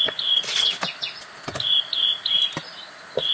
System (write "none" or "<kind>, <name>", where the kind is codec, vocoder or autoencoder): none